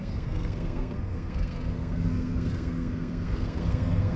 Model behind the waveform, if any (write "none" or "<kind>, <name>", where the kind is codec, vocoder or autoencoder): codec, SNAC